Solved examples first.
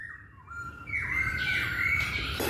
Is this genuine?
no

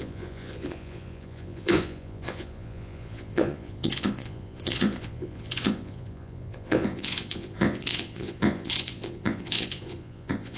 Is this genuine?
no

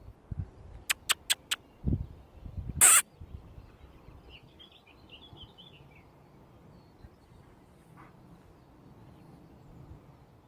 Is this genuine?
yes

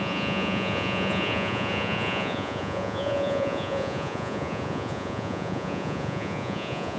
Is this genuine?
no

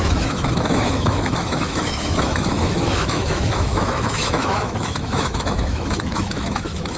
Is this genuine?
no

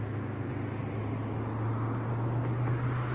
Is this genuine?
yes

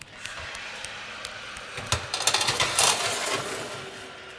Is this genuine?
yes